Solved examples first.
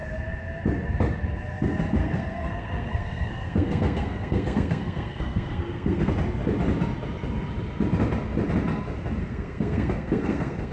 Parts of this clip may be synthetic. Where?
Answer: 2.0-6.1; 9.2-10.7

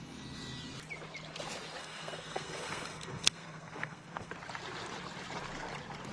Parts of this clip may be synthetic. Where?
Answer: 1.8-4.3

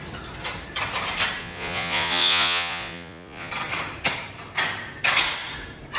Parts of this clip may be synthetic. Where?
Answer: 1.4-3.5

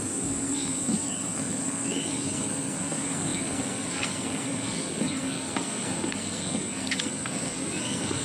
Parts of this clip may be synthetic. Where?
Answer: 0.0-8.2

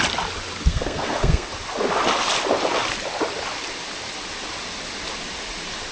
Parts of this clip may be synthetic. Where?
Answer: 0.7-1.5

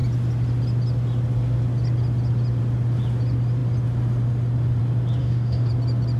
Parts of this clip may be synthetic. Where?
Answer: 5.2-5.7

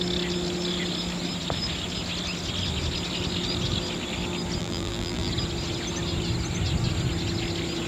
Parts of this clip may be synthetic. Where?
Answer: 4.6-5.3